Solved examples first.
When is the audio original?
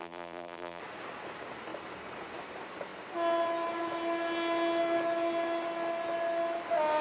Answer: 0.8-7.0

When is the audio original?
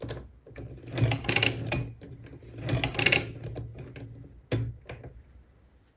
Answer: 0.0-6.0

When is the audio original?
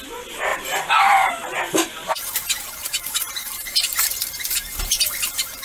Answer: 0.0-0.5; 1.3-2.8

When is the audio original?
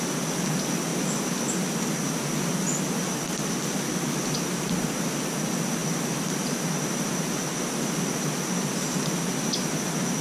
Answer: 0.0-10.2